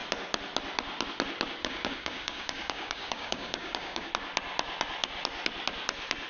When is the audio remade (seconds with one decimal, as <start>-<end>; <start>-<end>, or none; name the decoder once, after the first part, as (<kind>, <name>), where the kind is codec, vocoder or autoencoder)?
1.6-4.1 (codec, DAC)